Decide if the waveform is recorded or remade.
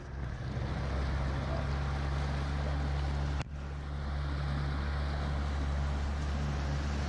recorded